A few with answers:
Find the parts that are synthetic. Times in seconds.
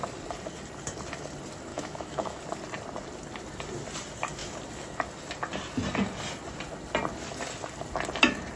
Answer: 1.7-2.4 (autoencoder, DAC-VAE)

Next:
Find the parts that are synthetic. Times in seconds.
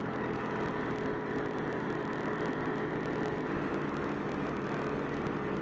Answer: 1.6-2.1 (vocoder, BigVGAN v2)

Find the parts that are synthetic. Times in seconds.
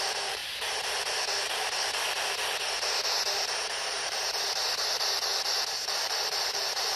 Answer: 0.0-0.4 (vocoder, BigVGAN v2); 3.9-5.3; 5.8-7.0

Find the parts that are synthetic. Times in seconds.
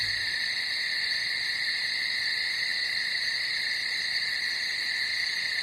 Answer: none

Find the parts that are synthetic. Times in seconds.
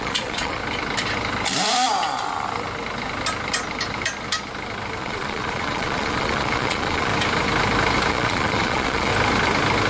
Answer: 0.0-0.6 (vocoder, Vocos); 5.0-7.1; 8.1-9.1